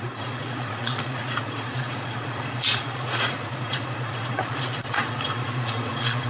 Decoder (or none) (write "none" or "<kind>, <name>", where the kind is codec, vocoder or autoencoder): vocoder, Vocos